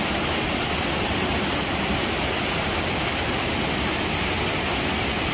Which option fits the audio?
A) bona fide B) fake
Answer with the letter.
A